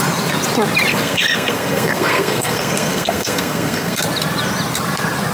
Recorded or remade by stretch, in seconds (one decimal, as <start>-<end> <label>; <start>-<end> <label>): 0.0-0.9 recorded; 0.9-4.0 remade; 4.0-5.3 recorded